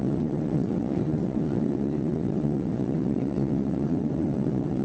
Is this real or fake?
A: fake